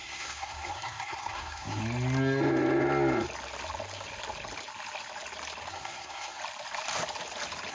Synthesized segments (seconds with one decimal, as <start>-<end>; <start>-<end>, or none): 0.0-1.8; 5.7-6.4